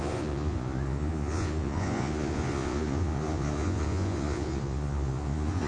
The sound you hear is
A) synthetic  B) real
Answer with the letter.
A